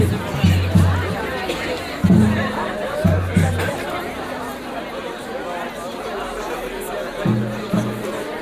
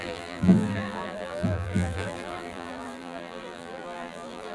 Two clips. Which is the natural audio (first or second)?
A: first